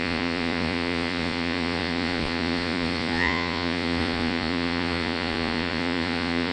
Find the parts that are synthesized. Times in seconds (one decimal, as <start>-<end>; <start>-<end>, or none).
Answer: 0.0-6.5